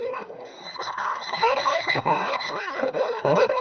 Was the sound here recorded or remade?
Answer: remade